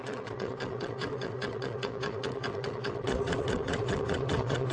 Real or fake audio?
fake